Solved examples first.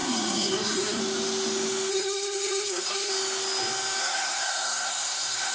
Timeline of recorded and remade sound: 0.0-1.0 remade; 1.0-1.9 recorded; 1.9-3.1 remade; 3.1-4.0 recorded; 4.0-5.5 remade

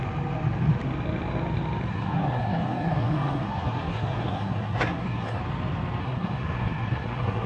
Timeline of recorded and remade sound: 0.0-1.9 recorded; 1.9-5.4 remade; 5.4-6.0 recorded; 6.0-7.5 remade

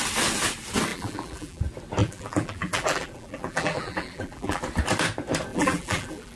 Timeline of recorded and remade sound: 0.0-0.9 recorded; 0.9-1.6 remade; 1.6-2.0 recorded; 2.0-4.6 remade; 4.6-5.5 recorded; 5.5-6.4 remade